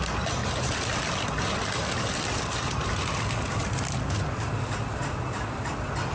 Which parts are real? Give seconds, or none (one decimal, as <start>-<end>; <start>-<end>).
0.0-0.4; 4.1-6.1